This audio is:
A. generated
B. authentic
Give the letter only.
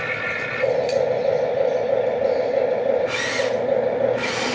B